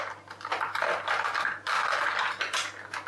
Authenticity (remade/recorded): recorded